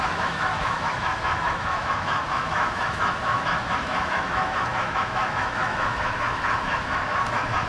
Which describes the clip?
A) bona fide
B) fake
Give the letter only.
B